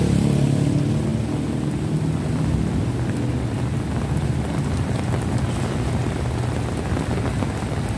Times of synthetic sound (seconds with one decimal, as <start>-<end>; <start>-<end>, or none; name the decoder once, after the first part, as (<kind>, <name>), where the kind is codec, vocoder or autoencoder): none